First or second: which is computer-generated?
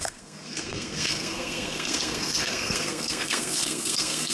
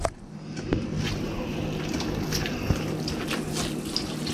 first